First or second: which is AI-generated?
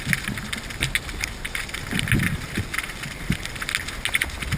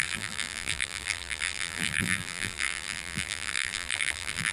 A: second